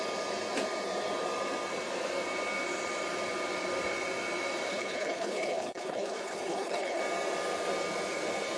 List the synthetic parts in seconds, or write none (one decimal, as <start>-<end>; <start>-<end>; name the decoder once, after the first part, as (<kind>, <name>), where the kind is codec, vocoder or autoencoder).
4.7-7.0 (codec, HILCodec)